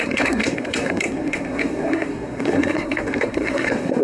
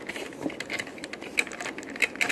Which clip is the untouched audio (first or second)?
second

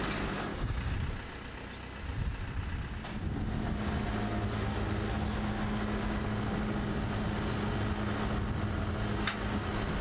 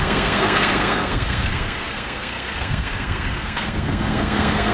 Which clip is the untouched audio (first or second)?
first